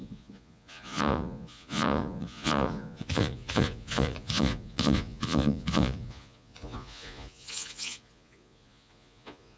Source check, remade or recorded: remade